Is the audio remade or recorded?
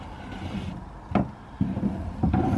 recorded